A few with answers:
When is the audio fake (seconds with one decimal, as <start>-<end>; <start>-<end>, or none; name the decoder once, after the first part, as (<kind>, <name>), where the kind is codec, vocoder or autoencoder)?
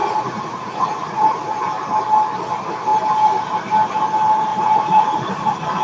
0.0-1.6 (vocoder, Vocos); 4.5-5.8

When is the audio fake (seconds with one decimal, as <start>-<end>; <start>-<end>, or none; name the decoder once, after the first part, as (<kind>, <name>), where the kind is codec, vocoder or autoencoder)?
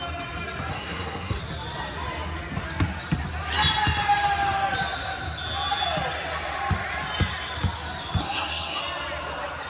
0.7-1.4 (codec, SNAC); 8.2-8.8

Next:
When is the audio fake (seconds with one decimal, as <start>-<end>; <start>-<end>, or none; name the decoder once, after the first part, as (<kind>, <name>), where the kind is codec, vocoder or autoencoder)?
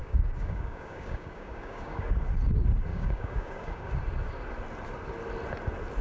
0.0-2.3 (codec, DAC); 2.9-4.0